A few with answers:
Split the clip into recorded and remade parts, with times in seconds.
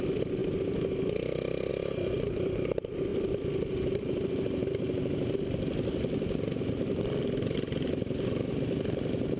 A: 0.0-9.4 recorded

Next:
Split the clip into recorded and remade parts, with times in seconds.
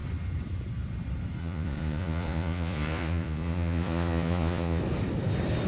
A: 0.0-1.4 recorded; 1.4-4.8 remade; 4.8-5.7 recorded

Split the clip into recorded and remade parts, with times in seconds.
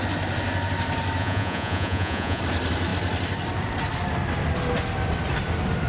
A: 0.0-1.2 recorded; 1.2-2.4 remade; 2.4-5.9 recorded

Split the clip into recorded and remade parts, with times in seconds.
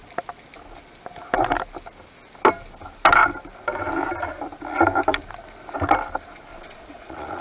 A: 0.0-6.5 recorded; 6.5-7.4 remade